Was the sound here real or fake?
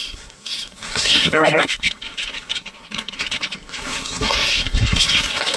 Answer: fake